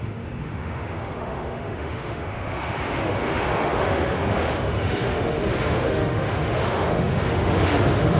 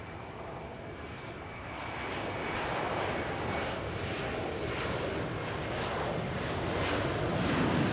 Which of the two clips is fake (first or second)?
first